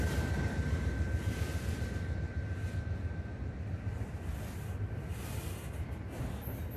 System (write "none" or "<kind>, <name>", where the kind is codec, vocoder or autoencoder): none